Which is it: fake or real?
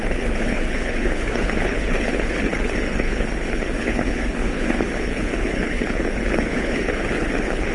fake